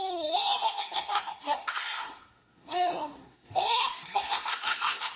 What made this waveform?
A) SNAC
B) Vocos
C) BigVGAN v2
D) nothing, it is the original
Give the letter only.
A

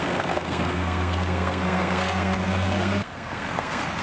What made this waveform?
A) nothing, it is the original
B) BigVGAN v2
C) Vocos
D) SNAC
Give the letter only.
D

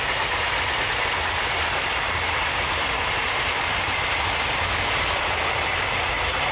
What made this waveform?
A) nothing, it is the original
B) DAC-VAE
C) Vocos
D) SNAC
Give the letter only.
A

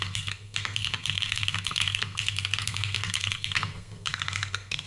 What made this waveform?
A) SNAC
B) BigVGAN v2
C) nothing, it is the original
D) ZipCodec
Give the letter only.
A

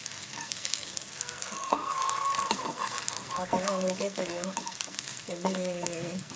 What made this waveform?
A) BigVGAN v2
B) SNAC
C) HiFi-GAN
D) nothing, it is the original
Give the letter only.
B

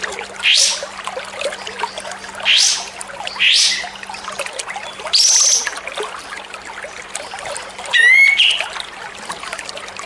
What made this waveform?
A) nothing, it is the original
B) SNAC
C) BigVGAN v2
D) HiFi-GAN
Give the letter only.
A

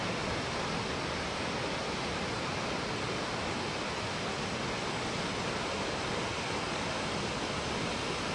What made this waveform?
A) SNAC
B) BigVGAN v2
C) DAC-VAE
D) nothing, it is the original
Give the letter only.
D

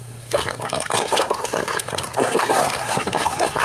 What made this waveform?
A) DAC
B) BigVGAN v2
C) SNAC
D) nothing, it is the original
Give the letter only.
C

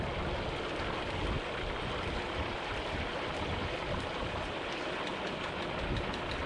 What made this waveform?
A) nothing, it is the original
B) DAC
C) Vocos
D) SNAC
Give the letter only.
A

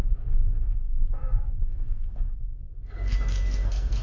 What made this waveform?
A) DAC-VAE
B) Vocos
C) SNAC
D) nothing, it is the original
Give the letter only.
C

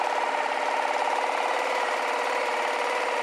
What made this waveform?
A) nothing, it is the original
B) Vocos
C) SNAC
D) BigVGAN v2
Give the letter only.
A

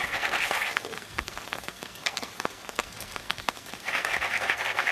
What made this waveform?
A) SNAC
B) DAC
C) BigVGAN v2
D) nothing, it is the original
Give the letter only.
A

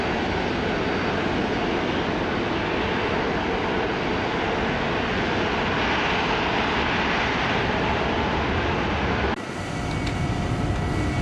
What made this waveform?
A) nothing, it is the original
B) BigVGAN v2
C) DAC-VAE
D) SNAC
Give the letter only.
A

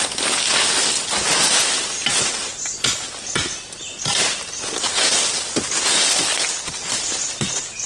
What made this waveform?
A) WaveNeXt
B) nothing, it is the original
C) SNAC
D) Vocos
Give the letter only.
B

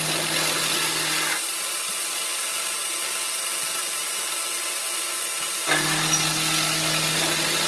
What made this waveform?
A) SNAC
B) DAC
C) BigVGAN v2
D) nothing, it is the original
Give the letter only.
D